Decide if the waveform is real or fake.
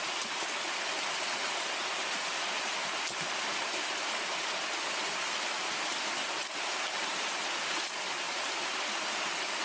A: real